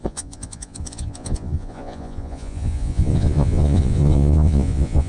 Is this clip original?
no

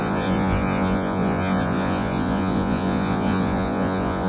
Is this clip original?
no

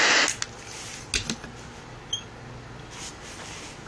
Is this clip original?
yes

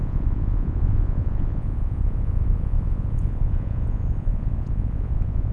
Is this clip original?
no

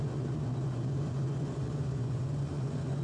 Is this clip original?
no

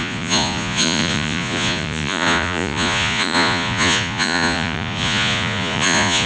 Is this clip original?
no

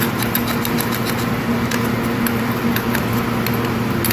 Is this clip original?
yes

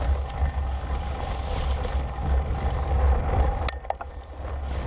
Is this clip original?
yes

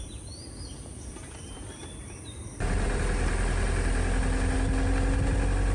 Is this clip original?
yes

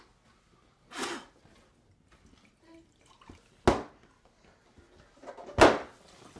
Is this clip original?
yes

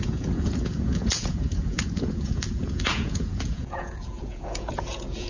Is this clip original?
no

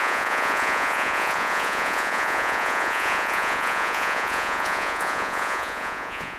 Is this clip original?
no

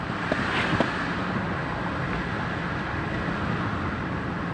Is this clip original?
yes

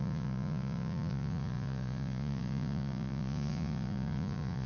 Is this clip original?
no